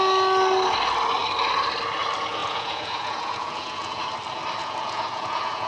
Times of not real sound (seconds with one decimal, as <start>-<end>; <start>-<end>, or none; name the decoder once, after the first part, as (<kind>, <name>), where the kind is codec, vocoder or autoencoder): 2.4-4.0 (vocoder, Vocos); 4.6-5.7